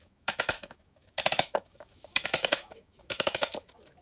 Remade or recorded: remade